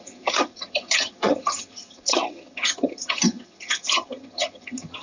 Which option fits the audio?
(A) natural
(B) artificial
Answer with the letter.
B